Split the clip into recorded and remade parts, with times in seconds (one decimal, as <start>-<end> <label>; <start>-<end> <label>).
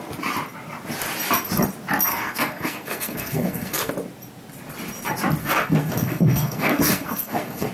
0.0-2.1 recorded; 2.1-3.9 remade; 3.9-5.4 recorded; 5.4-7.7 remade